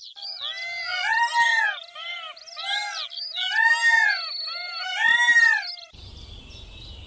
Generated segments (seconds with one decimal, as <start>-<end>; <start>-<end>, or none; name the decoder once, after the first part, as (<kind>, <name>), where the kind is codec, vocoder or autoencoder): none